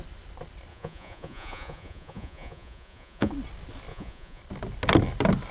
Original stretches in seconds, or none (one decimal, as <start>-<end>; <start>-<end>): 0.0-0.7; 3.3-3.9; 4.4-5.5